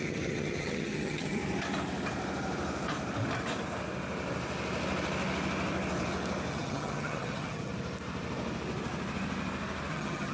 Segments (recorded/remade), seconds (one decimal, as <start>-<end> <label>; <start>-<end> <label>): 0.0-1.4 remade; 1.4-6.5 recorded; 6.5-7.7 remade; 7.7-9.9 recorded; 9.9-10.3 remade